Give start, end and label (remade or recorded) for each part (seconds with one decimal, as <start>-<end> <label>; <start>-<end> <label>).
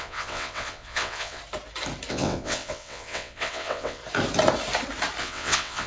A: 0.0-1.4 remade; 1.4-2.1 recorded; 2.1-4.0 remade; 4.0-5.2 recorded; 5.2-5.9 remade